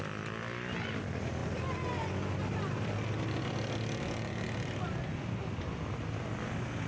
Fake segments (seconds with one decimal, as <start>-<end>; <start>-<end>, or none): none